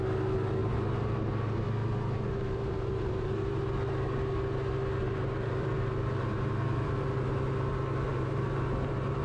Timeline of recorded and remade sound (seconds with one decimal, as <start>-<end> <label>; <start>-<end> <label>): 0.0-0.6 recorded; 0.6-1.3 remade; 1.3-1.8 recorded; 1.8-3.5 remade; 3.5-5.0 recorded; 5.0-7.2 remade; 7.2-8.1 recorded; 8.1-9.2 remade